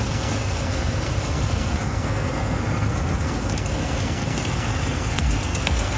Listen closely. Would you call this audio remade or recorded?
remade